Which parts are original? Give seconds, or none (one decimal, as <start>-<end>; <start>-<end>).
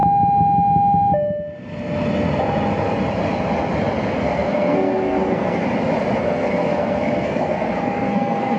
0.0-4.2; 5.6-6.2